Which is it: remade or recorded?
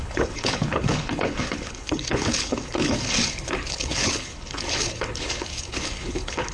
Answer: remade